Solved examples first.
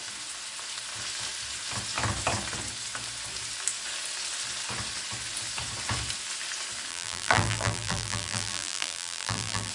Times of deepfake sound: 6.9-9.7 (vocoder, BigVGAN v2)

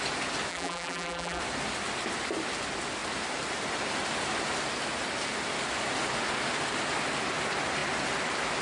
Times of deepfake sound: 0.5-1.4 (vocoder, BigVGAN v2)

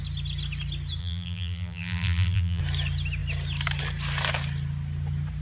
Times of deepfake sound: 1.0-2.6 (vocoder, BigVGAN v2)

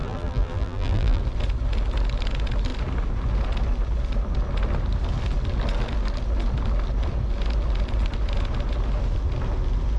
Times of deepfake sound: 0.0-1.2 (vocoder, BigVGAN v2)